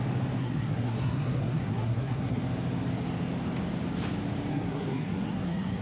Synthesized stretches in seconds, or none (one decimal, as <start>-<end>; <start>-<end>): 0.4-2.4; 4.5-5.8